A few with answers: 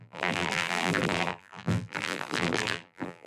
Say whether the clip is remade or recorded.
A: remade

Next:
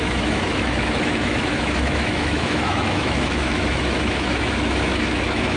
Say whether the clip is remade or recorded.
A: remade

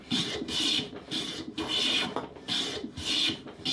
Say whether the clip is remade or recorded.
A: remade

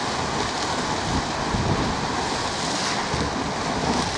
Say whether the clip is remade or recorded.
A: recorded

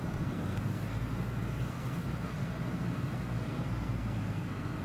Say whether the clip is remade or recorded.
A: remade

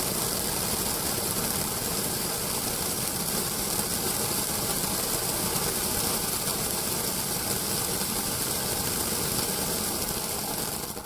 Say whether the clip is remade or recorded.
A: remade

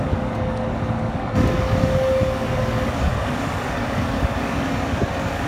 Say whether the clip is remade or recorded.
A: remade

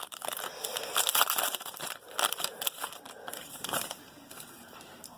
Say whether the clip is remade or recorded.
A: remade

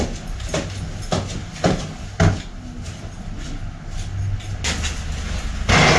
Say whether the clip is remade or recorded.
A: recorded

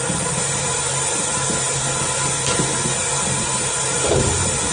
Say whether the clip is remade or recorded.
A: recorded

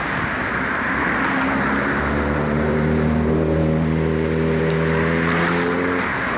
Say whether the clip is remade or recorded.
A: recorded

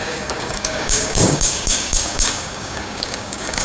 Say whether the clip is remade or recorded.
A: remade